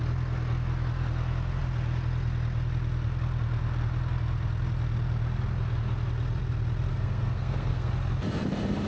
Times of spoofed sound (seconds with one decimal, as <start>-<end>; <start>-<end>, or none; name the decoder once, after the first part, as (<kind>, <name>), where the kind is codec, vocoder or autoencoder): 6.9-7.9 (codec, SNAC)